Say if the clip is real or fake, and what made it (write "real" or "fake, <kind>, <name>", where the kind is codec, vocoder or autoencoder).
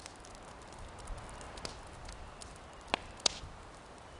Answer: real